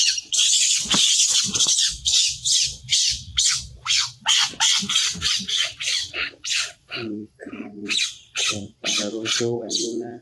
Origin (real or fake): fake